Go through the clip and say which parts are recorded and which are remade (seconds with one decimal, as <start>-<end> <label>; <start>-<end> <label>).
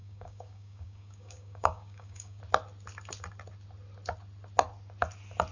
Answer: 0.0-2.4 remade; 2.4-5.5 recorded